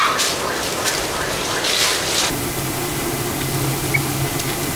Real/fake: real